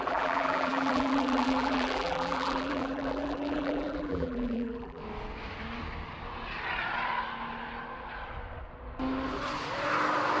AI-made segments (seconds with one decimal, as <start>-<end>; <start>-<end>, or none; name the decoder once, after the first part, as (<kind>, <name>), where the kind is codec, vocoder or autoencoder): 0.0-5.0 (vocoder, BigVGAN v2)